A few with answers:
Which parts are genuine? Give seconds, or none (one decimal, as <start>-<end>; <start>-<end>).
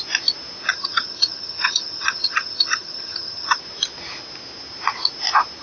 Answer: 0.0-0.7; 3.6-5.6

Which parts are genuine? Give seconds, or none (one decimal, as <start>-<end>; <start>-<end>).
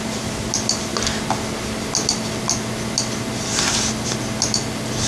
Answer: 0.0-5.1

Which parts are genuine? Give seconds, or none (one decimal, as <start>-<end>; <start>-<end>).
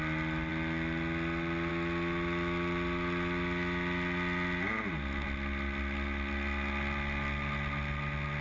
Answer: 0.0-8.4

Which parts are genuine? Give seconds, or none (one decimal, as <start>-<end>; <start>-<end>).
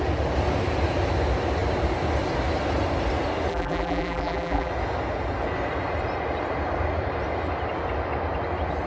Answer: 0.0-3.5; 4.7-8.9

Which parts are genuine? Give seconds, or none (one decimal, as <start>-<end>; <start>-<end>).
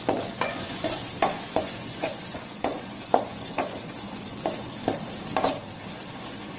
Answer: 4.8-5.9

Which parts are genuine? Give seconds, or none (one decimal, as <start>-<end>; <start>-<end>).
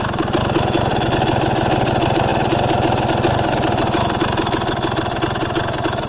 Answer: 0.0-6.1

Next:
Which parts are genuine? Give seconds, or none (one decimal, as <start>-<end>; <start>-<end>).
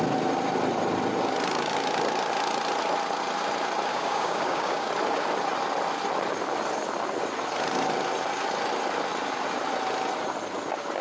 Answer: 0.0-3.9; 4.9-11.0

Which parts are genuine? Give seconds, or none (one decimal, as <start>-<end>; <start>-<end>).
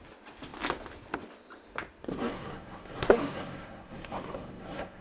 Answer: 0.0-2.1